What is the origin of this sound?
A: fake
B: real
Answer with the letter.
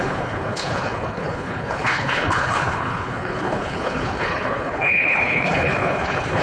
A